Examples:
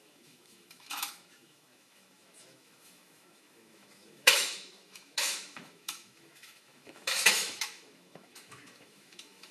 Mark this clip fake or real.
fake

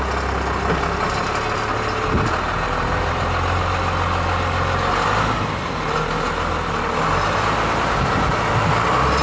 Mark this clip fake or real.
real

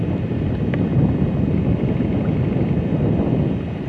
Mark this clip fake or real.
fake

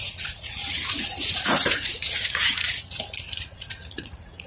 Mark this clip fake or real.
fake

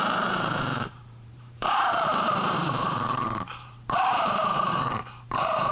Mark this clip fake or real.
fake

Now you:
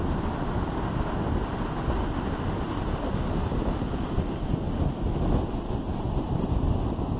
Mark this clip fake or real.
real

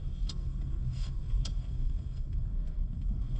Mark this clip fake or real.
fake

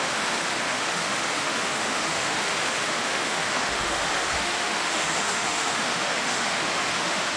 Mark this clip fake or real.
fake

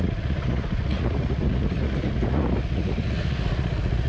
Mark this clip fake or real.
fake